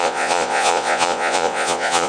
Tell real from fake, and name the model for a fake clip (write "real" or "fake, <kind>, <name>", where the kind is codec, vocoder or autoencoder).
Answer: fake, vocoder, Vocos